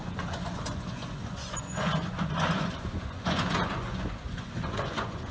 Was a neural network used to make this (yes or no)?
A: yes